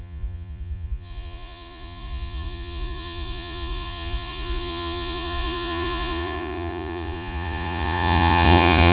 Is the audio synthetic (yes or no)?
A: yes